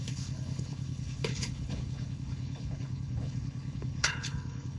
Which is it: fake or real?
fake